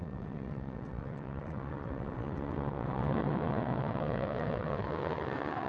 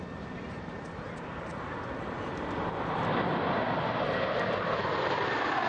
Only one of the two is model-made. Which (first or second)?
first